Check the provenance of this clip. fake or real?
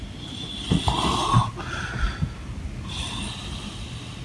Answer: real